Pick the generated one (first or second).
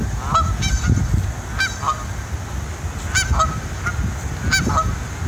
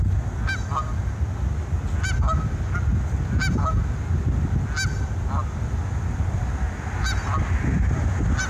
first